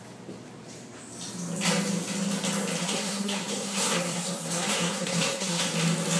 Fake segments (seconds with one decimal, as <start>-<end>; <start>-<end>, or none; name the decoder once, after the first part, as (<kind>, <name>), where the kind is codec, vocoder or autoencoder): 2.8-5.6 (codec, SNAC)